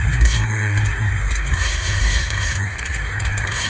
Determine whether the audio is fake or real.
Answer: fake